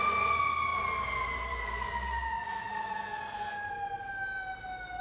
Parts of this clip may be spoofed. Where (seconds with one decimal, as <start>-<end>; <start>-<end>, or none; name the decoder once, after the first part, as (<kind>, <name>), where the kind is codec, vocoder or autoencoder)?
0.7-3.7 (vocoder, BigVGAN v2)

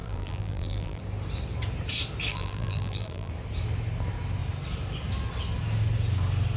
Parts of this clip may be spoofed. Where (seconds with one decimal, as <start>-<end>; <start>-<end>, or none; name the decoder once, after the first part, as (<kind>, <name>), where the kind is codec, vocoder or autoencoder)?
0.0-1.0 (vocoder, BigVGAN v2); 2.3-3.3